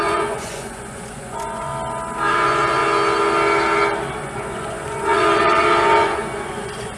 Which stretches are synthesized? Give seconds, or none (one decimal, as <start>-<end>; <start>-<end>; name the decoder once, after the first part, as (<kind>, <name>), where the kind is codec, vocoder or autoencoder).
0.0-1.7 (vocoder, Vocos); 2.3-2.8; 4.2-7.0